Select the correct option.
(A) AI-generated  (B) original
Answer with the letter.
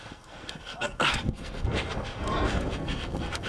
A